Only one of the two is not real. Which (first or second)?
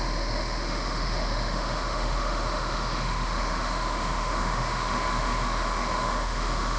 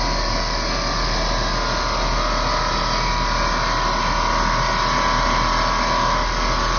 first